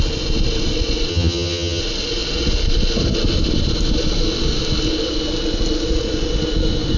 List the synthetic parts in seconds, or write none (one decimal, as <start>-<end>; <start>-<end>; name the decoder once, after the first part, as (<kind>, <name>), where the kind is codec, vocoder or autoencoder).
1.1-1.8 (vocoder, HiFi-GAN)